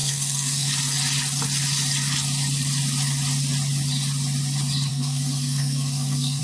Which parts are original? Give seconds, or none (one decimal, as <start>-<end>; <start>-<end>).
0.7-4.9

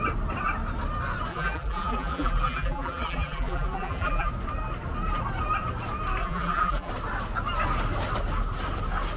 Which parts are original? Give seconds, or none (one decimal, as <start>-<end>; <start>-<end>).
0.0-1.3; 4.3-6.2; 6.9-9.2

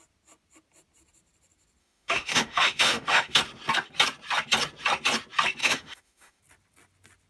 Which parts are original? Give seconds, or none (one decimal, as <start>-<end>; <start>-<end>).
0.0-1.8; 3.4-5.6; 6.4-7.3

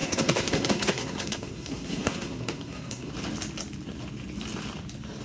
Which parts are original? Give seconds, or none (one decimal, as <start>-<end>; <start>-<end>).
3.1-5.2

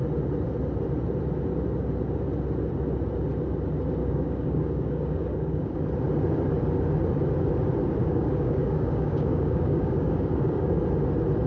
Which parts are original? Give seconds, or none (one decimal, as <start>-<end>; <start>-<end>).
0.0-4.0; 5.8-8.0; 10.8-11.5

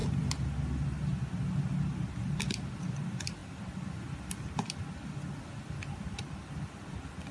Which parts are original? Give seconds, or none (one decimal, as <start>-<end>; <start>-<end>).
0.0-7.3

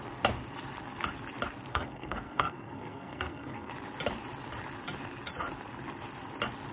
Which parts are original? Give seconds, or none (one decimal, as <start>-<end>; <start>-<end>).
0.0-1.7; 3.7-6.7